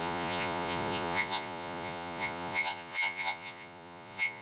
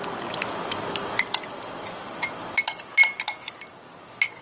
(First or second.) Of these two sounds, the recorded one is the second